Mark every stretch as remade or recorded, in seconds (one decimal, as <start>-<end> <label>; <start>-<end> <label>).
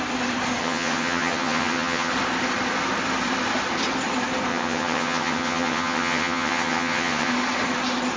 0.0-0.6 recorded; 0.6-2.1 remade; 2.1-4.5 recorded; 4.5-7.3 remade; 7.3-8.2 recorded